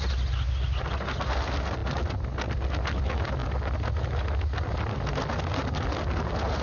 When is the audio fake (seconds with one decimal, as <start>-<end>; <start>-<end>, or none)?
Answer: none